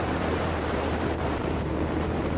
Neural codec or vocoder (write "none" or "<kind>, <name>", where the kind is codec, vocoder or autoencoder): vocoder, BigVGAN v2